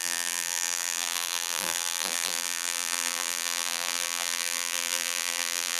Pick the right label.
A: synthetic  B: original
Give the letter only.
A